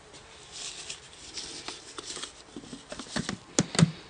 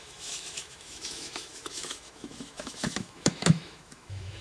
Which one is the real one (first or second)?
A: first